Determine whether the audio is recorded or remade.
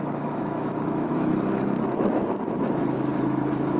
remade